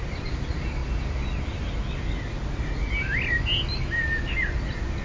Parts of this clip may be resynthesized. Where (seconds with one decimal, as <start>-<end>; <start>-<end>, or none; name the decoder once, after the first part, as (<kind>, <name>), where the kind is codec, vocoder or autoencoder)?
none

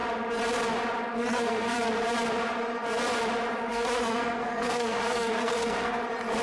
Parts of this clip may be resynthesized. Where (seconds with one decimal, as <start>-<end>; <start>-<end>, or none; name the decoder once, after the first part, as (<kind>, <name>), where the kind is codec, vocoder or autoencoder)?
1.2-1.9 (codec, SNAC); 3.7-6.0

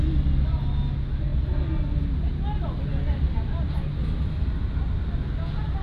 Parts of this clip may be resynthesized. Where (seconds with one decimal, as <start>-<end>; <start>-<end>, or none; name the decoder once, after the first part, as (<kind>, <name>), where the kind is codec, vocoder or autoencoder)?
none

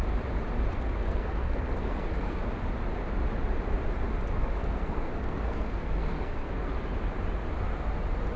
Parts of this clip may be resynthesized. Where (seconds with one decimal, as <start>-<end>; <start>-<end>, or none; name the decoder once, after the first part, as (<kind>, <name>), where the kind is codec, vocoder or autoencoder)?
0.7-2.5 (codec, SNAC); 4.4-6.7

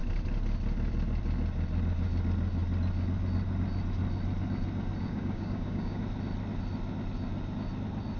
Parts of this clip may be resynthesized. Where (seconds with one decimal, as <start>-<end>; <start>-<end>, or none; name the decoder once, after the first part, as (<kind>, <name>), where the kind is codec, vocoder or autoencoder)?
5.0-6.0 (codec, DAC)

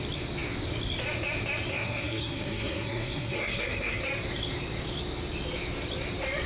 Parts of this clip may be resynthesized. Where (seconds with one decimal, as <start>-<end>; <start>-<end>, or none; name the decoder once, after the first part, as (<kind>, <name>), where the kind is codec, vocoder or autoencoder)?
1.7-4.0 (codec, SNAC)

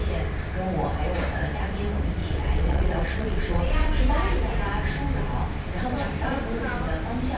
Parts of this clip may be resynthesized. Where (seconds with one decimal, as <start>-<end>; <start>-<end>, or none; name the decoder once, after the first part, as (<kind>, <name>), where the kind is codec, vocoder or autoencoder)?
2.2-4.0 (vocoder, WaveNeXt)